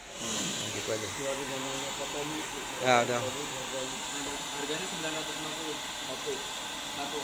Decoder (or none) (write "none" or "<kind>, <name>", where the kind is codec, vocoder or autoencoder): none